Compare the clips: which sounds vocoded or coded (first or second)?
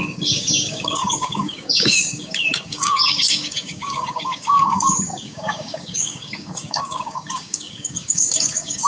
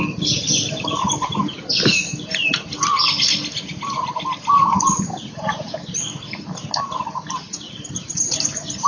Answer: first